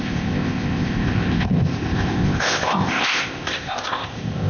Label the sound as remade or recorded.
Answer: remade